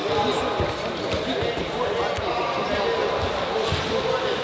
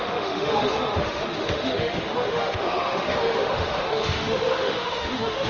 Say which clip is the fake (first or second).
second